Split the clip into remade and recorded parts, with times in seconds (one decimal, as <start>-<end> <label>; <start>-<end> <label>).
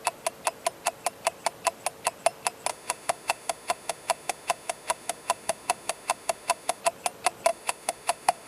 0.0-2.7 recorded; 2.7-6.8 remade; 6.8-7.5 recorded; 7.5-8.5 remade